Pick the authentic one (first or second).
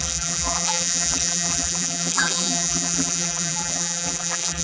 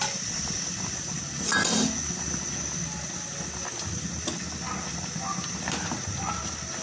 second